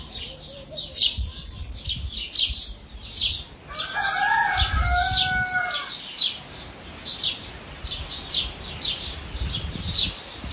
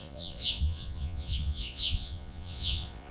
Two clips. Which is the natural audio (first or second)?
first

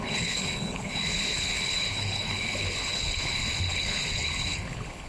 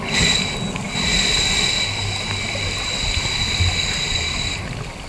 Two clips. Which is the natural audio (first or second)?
second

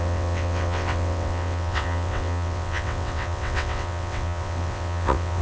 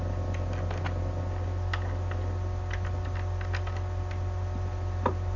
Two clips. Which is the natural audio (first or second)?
second